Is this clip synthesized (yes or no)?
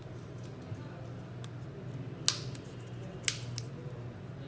no